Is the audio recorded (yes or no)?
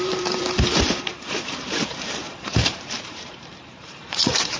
no